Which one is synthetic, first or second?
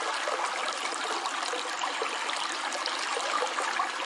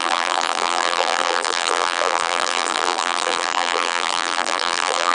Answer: second